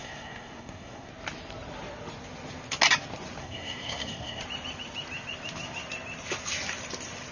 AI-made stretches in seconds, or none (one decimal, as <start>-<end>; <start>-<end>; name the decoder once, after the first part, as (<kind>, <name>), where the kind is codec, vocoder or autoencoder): 0.0-1.1 (codec, SNAC); 3.4-4.4